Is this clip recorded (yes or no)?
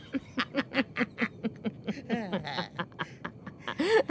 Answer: yes